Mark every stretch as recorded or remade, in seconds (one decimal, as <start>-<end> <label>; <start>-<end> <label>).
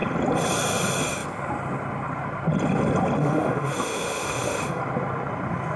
0.0-3.2 recorded; 3.2-4.8 remade; 4.8-5.8 recorded